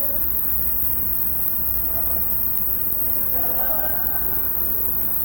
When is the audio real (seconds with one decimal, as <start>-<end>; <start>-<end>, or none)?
none